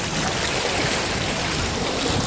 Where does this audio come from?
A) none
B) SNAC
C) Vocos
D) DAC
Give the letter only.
A